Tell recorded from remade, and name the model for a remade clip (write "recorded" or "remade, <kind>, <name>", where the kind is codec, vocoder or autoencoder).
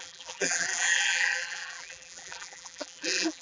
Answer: remade, vocoder, BigVGAN v2